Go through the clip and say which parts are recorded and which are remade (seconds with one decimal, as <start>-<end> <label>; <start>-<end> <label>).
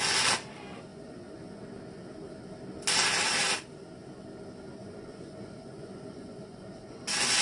0.0-0.9 recorded; 0.9-1.6 remade; 1.6-4.8 recorded; 4.8-7.0 remade; 7.0-7.4 recorded